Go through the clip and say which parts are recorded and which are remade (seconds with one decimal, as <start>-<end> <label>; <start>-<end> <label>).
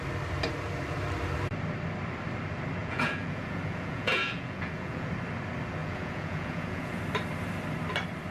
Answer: 0.0-2.8 recorded; 2.8-5.1 remade; 5.1-5.8 recorded; 5.8-7.0 remade; 7.0-8.3 recorded